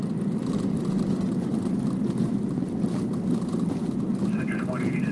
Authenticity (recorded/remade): recorded